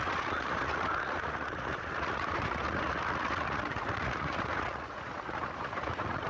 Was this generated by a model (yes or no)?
yes